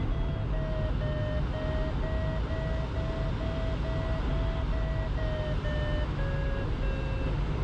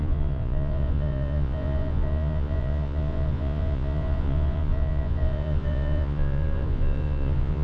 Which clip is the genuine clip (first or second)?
first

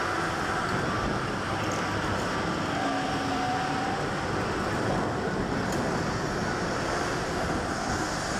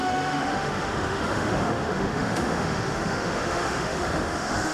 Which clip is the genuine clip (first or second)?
first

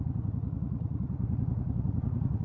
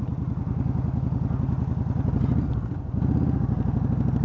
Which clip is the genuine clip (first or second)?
second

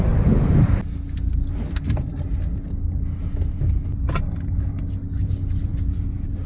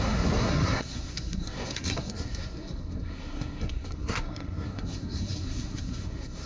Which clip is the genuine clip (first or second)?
first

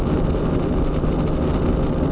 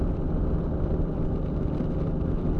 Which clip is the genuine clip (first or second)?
first